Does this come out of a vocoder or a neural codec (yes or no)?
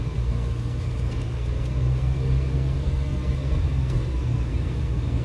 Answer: yes